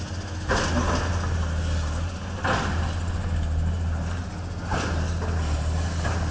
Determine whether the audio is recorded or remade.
recorded